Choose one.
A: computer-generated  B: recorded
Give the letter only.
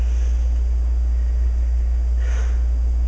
B